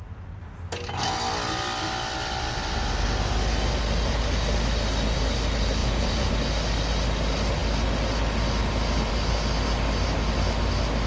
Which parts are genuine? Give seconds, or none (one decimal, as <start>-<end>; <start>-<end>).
0.0-5.8; 6.3-11.1